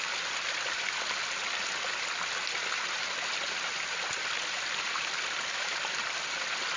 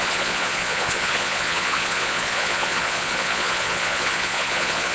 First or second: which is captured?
first